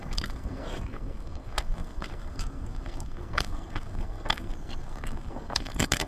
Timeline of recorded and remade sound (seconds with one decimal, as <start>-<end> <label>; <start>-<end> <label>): 0.0-6.1 remade